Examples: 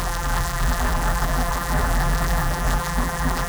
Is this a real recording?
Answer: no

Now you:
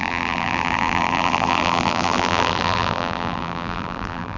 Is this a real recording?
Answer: no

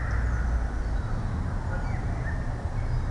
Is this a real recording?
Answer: yes